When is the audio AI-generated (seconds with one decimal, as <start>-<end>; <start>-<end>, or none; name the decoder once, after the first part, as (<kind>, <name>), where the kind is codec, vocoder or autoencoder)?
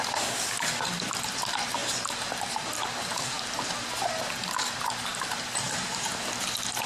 none